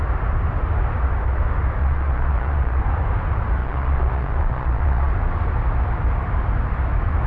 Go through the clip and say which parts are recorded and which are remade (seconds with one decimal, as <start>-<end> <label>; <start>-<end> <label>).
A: 0.0-1.8 recorded; 1.8-2.8 remade; 2.8-3.6 recorded; 3.6-5.1 remade; 5.1-7.3 recorded